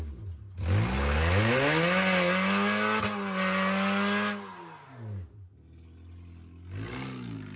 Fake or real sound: real